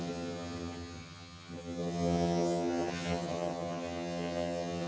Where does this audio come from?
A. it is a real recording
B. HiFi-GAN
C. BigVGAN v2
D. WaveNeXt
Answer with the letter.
B